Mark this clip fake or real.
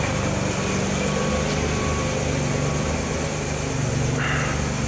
real